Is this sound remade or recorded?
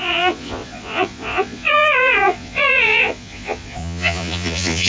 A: remade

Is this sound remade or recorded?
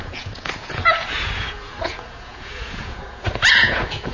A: remade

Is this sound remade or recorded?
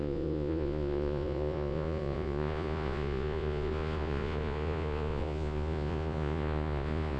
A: remade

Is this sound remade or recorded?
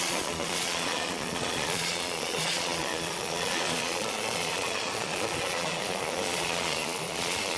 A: remade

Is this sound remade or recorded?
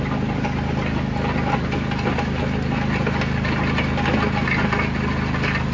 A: recorded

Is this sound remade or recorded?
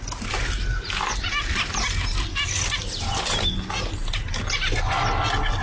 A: recorded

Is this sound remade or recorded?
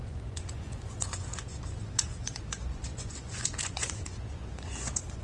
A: remade